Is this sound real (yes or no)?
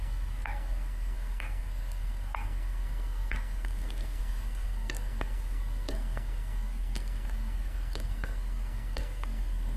no